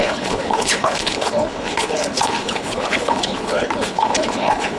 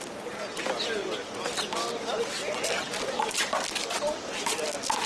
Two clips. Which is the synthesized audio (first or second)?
first